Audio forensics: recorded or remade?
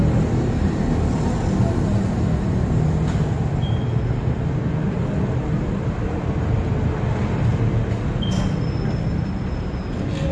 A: recorded